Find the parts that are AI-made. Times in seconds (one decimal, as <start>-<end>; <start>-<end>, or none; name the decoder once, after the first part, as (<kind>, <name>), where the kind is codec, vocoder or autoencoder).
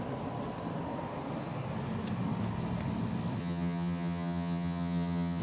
3.4-5.4 (vocoder, HiFi-GAN)